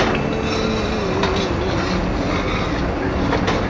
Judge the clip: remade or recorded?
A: recorded